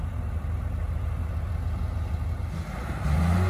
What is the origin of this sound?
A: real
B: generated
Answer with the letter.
A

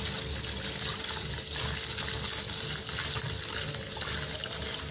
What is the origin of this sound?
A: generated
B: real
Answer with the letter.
B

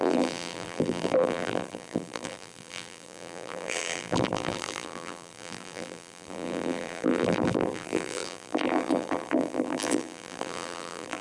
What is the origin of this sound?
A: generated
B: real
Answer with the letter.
A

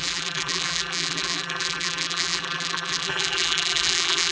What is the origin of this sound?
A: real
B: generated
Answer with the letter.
B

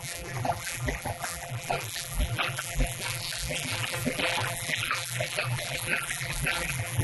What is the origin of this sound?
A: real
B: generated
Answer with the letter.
B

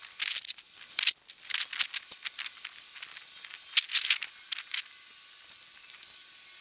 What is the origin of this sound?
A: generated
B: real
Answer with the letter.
B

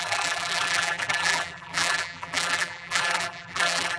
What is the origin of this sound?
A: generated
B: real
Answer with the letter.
A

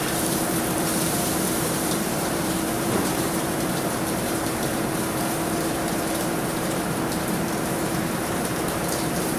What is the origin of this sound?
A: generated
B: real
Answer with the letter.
A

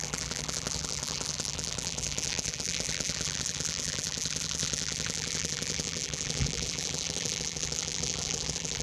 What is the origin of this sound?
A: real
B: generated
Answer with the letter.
B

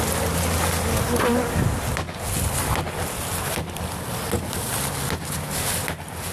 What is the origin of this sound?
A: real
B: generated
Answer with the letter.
A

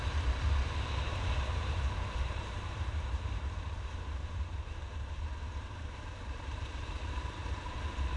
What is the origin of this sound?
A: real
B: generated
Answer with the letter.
B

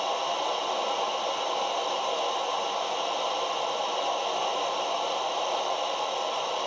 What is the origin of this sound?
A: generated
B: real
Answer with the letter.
B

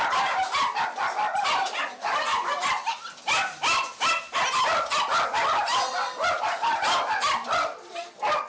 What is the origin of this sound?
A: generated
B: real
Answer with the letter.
B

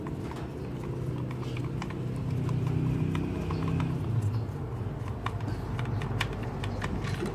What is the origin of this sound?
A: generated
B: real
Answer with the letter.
B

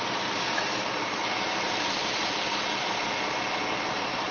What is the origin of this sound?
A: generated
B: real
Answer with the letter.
A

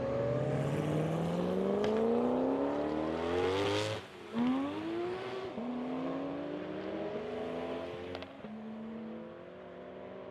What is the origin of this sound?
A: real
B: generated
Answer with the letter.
A